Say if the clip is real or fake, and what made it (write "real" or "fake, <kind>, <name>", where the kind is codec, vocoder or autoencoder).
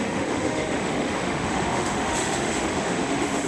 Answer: fake, autoencoder, DAC-VAE